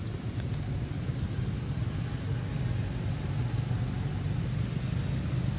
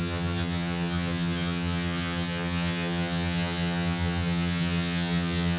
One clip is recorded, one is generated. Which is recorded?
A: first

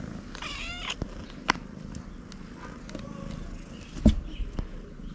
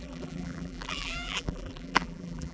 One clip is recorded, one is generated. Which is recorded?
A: first